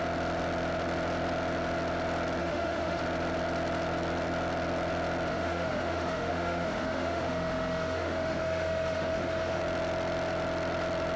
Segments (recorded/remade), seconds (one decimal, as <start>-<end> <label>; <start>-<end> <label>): 0.0-2.4 recorded; 2.4-3.0 remade; 3.0-5.3 recorded; 5.3-9.6 remade; 9.6-11.2 recorded